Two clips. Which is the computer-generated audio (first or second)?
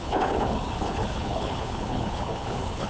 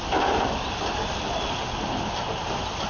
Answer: first